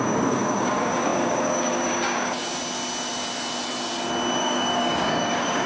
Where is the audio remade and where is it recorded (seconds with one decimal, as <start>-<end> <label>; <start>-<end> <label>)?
0.0-2.4 remade; 2.4-4.4 recorded; 4.4-5.7 remade

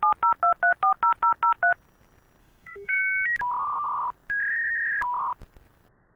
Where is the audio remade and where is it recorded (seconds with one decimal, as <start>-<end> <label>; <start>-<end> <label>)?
0.0-2.4 recorded; 2.4-3.0 remade; 3.0-6.2 recorded